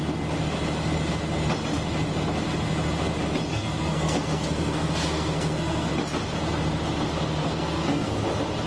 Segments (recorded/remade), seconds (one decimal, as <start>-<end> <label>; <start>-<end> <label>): 0.0-3.5 recorded; 3.5-5.9 remade; 5.9-7.4 recorded; 7.4-8.2 remade; 8.2-8.7 recorded